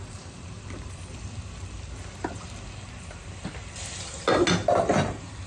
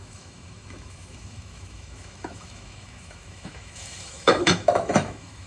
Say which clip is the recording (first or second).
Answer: first